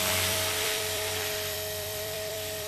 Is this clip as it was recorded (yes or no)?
no